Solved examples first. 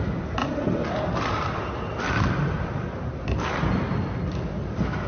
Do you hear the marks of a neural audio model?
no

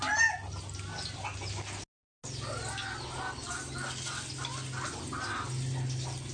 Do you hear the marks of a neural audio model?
no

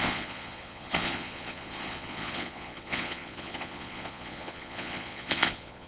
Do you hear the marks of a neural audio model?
yes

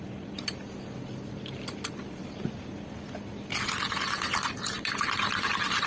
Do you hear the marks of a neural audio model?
no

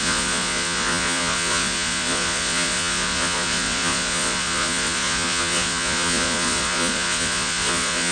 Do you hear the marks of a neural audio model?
yes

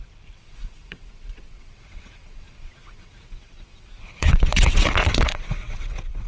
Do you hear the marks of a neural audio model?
yes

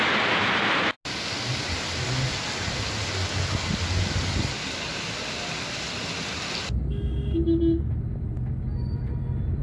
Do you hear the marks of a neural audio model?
no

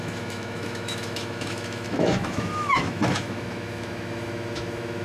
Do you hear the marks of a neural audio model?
yes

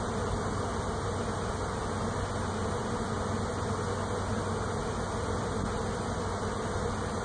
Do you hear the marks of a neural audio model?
no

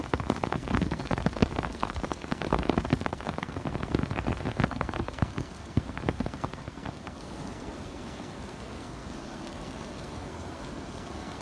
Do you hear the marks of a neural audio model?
yes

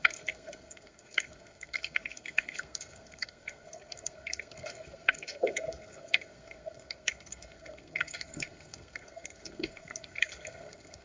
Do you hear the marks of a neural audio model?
yes